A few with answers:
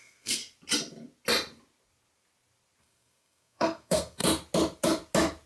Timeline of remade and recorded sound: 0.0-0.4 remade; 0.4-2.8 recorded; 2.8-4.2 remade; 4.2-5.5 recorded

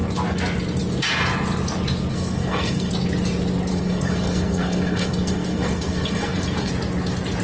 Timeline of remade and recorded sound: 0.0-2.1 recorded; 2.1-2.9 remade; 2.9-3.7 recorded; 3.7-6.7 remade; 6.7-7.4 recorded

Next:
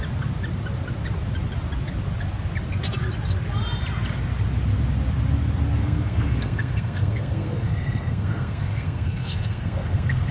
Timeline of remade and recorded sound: 0.0-5.8 recorded; 5.8-10.3 remade